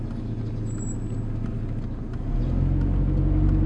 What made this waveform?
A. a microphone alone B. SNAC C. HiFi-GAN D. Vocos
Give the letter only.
A